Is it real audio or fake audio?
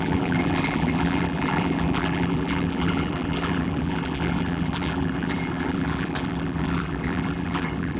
fake